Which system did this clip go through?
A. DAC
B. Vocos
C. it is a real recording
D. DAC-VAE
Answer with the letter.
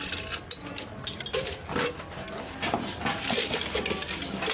C